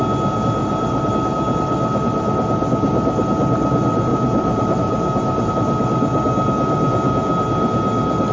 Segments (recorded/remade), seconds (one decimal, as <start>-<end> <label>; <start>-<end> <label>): 0.0-0.6 recorded; 0.6-1.1 remade; 1.1-4.1 recorded; 4.1-5.5 remade; 5.5-8.3 recorded